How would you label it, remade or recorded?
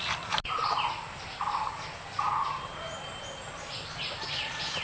recorded